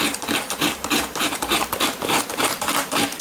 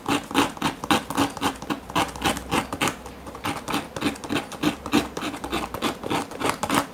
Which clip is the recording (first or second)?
second